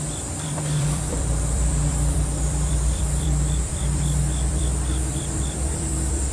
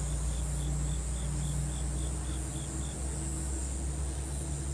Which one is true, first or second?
second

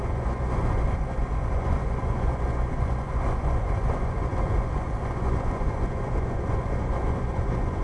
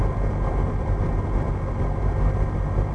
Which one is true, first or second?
second